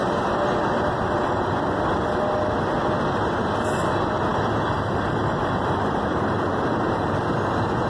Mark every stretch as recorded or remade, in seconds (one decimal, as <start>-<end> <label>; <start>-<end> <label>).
0.0-4.3 recorded; 4.3-7.2 remade; 7.2-7.9 recorded